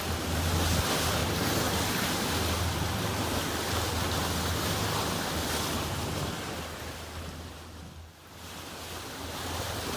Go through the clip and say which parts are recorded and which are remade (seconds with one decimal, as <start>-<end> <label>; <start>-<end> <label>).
0.0-10.0 recorded